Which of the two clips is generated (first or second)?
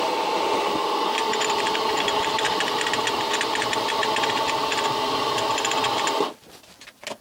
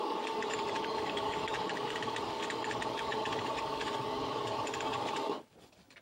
second